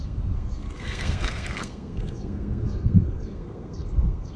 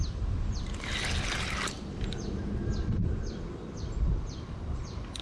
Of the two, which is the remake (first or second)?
first